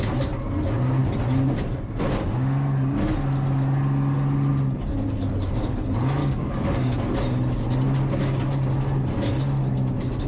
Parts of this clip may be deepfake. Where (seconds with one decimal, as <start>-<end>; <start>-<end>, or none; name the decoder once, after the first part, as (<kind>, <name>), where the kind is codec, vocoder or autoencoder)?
6.2-7.1 (codec, DAC)